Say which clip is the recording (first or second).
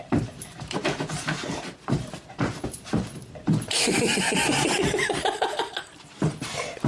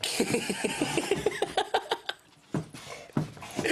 second